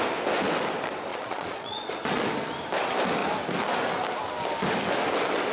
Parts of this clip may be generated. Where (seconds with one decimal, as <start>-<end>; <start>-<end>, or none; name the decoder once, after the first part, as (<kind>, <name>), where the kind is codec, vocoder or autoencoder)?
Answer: 1.1-1.9 (vocoder, Vocos)